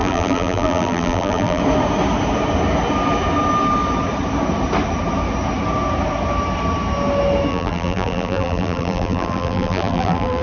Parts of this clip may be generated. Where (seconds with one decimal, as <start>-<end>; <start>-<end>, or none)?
0.0-1.6; 7.5-10.4